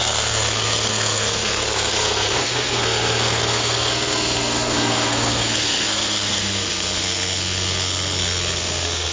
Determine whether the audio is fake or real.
fake